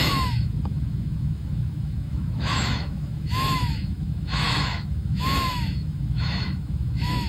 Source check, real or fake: fake